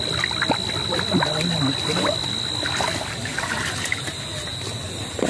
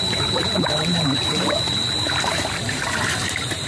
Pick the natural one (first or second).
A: first